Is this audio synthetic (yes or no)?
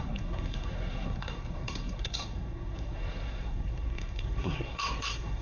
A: yes